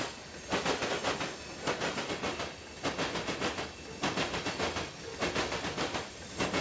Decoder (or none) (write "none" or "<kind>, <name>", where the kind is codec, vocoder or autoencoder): none